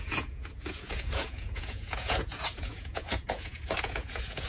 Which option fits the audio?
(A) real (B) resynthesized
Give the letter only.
B